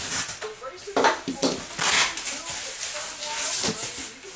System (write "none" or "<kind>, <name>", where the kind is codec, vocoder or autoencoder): none